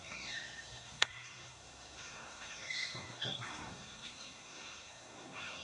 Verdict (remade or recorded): remade